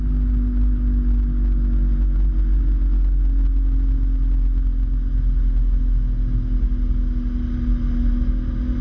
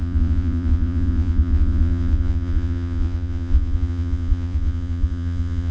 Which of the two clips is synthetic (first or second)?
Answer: second